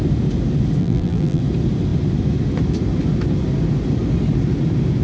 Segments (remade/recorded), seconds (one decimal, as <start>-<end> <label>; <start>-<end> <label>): 0.0-0.8 recorded; 0.8-1.4 remade; 1.4-5.0 recorded